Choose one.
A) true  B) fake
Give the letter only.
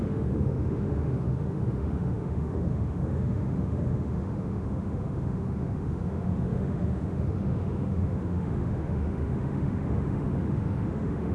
B